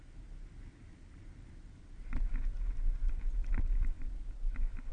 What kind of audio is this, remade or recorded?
recorded